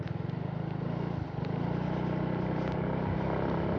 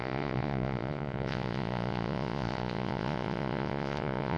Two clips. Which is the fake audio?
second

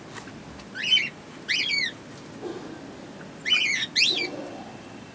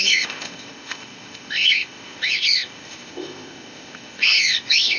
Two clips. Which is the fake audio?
second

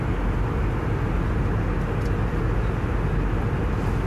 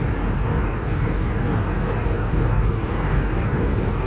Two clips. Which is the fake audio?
second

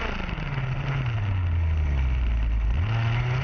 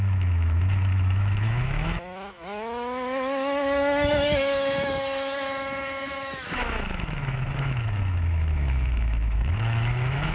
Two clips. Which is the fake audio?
second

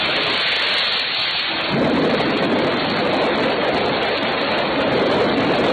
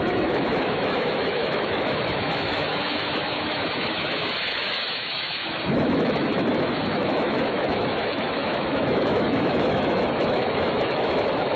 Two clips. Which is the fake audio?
second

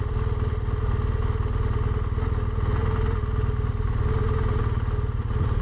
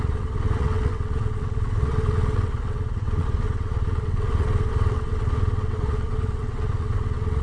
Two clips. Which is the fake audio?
second